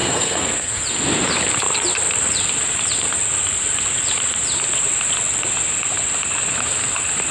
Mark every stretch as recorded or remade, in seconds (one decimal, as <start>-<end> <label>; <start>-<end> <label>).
0.0-0.8 remade; 0.8-7.3 recorded